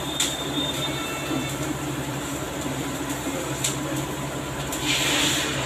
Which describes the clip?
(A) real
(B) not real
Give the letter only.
B